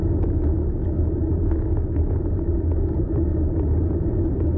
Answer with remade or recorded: recorded